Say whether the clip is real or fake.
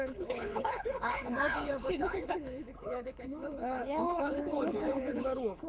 fake